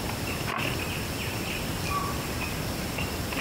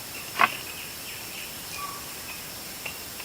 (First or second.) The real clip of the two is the second